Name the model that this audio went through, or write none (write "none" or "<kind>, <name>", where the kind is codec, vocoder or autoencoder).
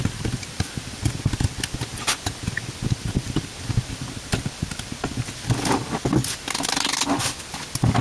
none